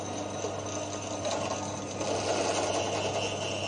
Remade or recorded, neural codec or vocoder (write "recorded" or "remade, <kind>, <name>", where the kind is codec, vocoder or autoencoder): recorded